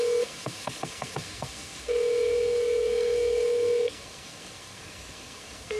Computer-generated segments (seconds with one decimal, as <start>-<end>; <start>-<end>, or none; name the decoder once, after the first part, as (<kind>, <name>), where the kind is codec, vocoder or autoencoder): 0.0-5.8 (codec, SNAC)